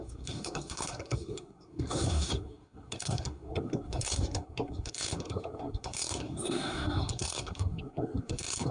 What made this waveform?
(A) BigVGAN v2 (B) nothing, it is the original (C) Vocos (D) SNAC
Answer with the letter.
D